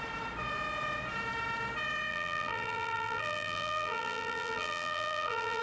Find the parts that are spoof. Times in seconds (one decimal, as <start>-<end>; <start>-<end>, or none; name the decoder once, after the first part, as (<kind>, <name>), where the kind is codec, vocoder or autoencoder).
2.1-5.6 (vocoder, BigVGAN v2)